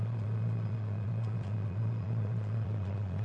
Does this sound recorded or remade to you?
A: remade